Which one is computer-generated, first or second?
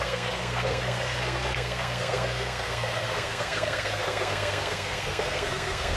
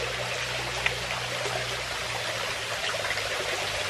first